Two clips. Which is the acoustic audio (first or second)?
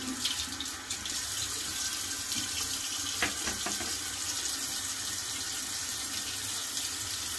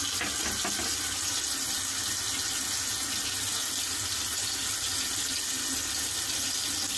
second